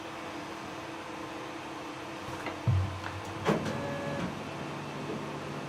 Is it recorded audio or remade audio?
recorded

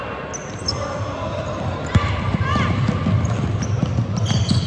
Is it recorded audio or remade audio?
recorded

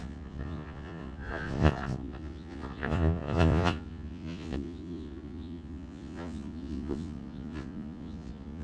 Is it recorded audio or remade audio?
remade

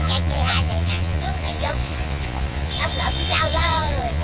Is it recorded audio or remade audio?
remade